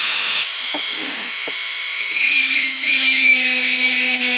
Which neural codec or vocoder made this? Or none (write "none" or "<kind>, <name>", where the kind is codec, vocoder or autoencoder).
autoencoder, DAC-VAE